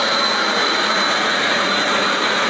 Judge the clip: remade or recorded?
remade